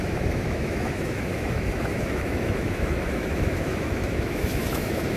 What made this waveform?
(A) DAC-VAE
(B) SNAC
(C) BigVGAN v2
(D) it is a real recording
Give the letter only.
A